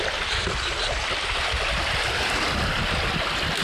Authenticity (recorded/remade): remade